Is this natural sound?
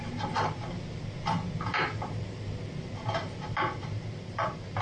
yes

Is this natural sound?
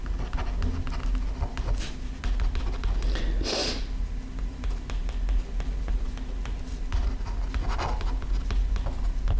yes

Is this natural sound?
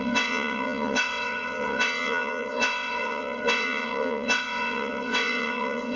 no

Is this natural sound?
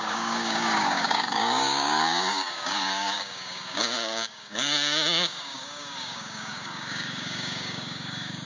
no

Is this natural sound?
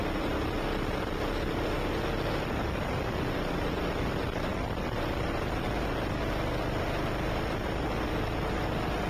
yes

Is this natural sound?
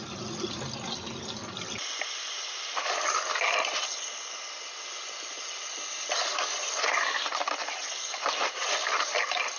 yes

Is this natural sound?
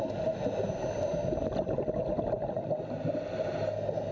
yes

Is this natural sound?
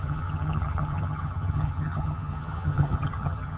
no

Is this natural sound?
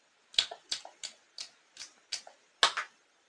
yes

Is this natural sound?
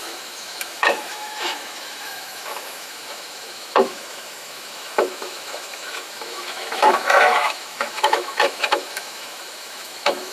no